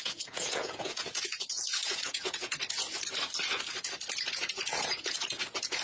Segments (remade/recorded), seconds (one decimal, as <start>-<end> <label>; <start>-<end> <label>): 0.0-2.5 remade; 2.5-4.3 recorded; 4.3-5.8 remade